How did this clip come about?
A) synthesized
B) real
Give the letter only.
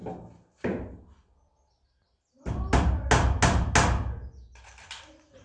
B